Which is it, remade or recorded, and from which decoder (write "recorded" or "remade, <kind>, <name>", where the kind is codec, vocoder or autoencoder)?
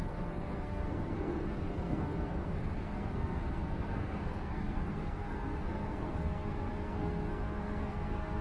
remade, codec, SNAC